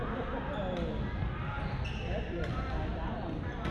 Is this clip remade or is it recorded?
recorded